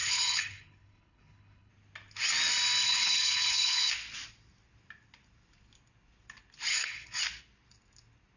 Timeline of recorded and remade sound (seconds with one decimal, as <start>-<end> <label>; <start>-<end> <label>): 0.0-1.7 remade; 1.7-2.8 recorded; 2.8-3.9 remade; 3.9-6.7 recorded; 6.7-7.2 remade; 7.2-8.4 recorded